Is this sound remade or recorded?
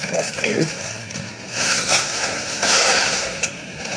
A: remade